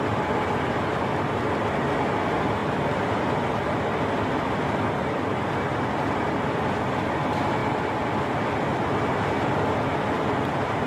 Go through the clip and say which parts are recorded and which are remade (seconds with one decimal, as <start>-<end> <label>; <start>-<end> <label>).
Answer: 0.0-2.6 recorded; 2.6-7.1 remade; 7.1-10.9 recorded